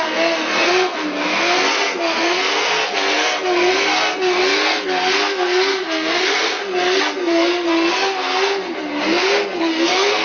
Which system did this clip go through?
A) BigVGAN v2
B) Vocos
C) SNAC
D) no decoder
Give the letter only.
C